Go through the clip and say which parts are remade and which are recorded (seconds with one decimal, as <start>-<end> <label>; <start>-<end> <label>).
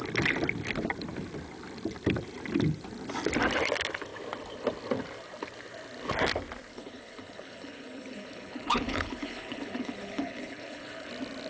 0.0-6.7 recorded; 6.7-11.1 remade; 11.1-11.5 recorded